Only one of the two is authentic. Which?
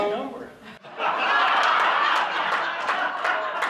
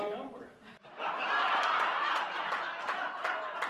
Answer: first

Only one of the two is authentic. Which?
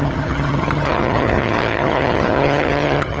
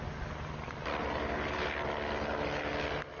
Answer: second